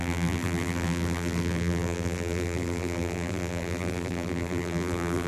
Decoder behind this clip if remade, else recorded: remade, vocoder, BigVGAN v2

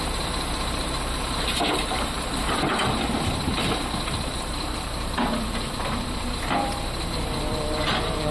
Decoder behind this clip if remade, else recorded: remade, vocoder, BigVGAN v2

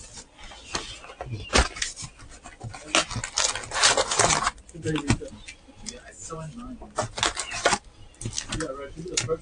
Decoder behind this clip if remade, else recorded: recorded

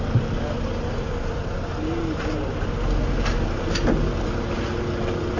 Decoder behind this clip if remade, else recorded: recorded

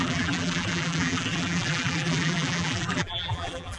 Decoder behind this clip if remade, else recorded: remade, vocoder, BigVGAN v2